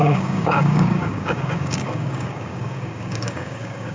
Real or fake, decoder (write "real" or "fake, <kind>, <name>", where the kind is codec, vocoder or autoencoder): fake, codec, DAC